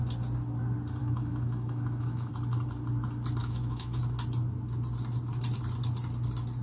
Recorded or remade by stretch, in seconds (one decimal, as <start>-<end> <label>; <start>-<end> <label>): 0.0-1.0 recorded; 1.0-2.3 remade; 2.3-3.4 recorded; 3.4-4.0 remade; 4.0-6.6 recorded